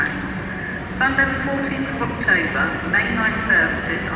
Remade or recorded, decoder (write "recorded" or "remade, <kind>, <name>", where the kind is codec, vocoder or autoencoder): remade, vocoder, BigVGAN v2